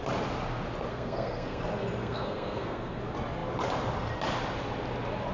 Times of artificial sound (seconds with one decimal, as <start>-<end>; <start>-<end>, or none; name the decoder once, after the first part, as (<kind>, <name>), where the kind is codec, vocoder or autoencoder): 0.9-1.6 (codec, SNAC); 2.0-3.0